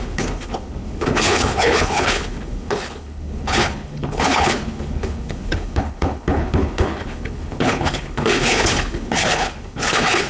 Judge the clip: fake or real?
fake